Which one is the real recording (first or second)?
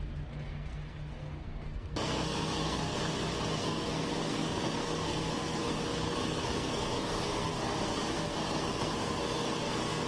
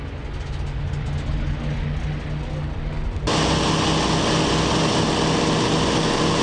second